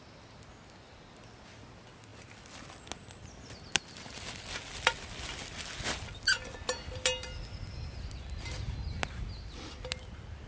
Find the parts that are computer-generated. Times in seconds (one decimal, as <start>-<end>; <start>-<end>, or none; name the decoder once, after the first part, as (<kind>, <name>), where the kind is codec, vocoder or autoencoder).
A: none